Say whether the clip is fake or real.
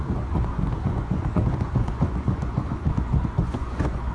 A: fake